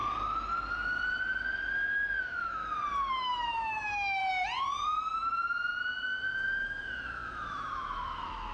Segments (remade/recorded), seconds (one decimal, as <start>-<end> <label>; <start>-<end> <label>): 0.0-2.2 recorded; 2.2-2.6 remade; 2.6-3.1 recorded; 3.1-4.2 remade; 4.2-6.7 recorded; 6.7-8.5 remade